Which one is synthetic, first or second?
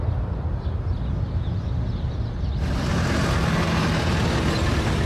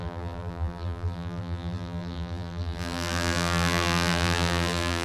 second